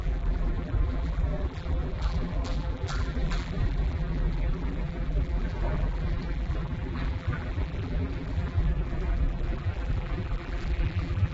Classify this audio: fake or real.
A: fake